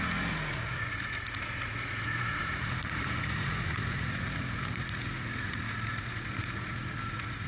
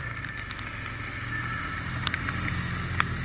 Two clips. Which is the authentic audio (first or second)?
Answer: second